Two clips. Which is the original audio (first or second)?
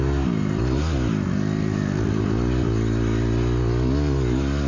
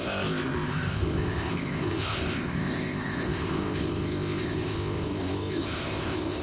first